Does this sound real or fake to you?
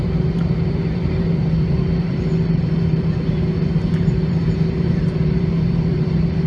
fake